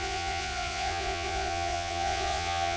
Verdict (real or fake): fake